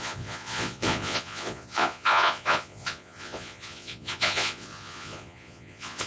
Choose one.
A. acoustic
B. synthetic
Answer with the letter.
B